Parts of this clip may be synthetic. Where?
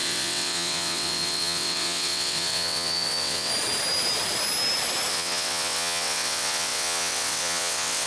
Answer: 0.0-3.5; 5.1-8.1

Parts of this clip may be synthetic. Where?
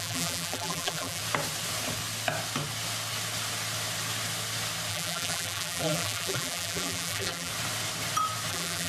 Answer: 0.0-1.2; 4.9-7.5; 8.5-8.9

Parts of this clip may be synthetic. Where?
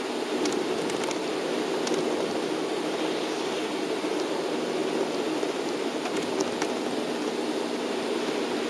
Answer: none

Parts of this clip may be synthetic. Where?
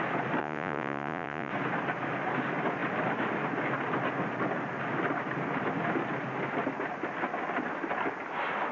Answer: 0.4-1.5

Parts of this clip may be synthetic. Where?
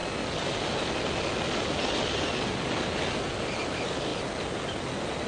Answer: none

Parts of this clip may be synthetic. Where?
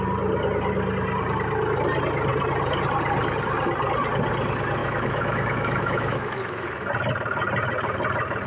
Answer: 4.8-6.9